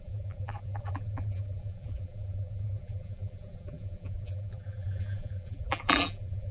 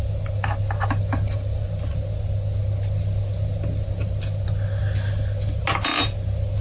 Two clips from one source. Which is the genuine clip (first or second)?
second